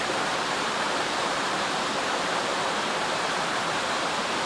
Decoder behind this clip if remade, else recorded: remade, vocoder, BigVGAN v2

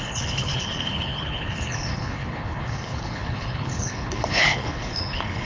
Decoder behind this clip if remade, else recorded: remade, codec, HILCodec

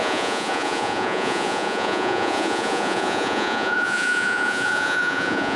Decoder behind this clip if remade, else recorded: remade, vocoder, Vocos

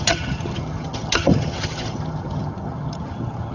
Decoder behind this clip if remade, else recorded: remade, vocoder, HiFi-GAN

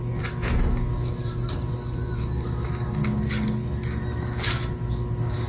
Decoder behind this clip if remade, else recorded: recorded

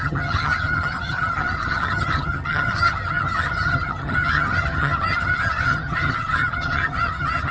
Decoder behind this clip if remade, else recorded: remade, vocoder, HiFi-GAN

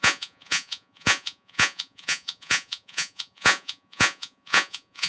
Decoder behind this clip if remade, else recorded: remade, vocoder, Vocos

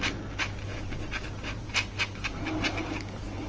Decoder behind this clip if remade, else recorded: recorded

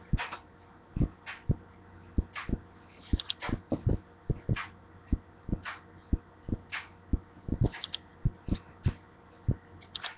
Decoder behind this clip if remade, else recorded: recorded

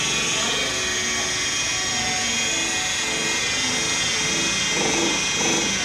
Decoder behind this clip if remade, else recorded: recorded